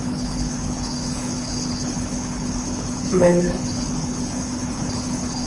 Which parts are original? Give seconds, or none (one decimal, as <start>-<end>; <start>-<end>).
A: none